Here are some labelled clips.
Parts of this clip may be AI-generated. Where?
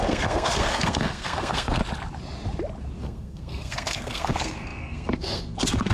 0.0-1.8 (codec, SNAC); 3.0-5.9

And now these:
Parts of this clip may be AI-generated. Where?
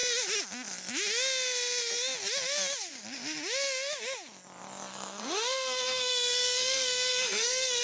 4.9-7.8 (codec, SNAC)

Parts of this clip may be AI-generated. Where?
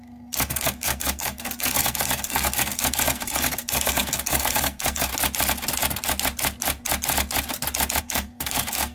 0.0-5.1 (codec, SNAC); 8.0-8.9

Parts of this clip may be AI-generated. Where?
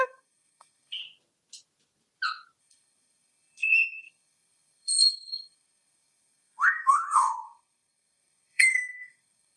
0.0-1.0 (codec, SNAC); 2.6-9.6